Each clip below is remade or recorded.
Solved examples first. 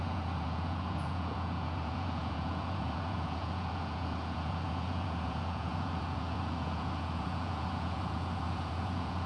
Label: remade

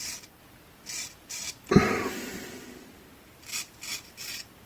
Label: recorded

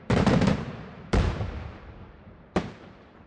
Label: remade